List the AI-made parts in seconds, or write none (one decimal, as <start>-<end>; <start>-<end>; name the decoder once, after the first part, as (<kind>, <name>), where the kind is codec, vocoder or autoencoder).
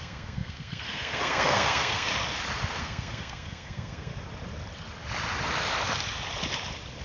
0.0-2.1 (codec, SNAC); 2.8-4.1